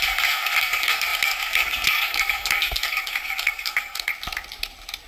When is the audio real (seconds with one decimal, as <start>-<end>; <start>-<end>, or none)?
4.1-5.1